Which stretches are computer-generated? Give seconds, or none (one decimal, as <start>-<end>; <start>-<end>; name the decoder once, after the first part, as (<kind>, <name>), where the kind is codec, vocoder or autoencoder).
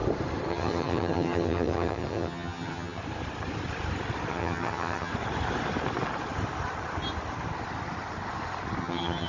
0.5-3.0 (vocoder, HiFi-GAN); 4.3-5.1; 8.8-9.3